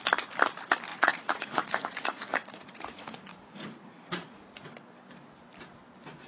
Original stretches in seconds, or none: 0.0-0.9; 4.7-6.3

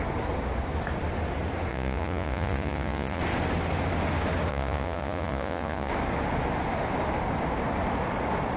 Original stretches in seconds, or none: 0.0-1.7; 3.2-4.5; 5.9-8.6